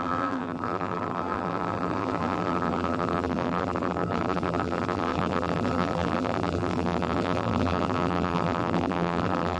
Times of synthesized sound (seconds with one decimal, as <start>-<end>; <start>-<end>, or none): 0.0-9.6